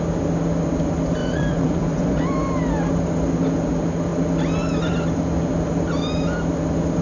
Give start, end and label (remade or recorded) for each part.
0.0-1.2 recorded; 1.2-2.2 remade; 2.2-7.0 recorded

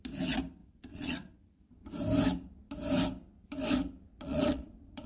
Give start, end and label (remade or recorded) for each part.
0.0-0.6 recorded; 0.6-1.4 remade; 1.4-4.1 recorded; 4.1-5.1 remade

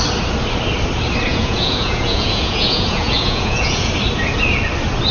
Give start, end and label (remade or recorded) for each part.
0.0-1.3 recorded; 1.3-3.9 remade; 3.9-5.1 recorded

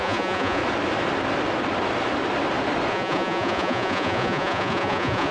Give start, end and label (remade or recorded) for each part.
0.0-0.6 remade; 0.6-2.9 recorded; 2.9-5.3 remade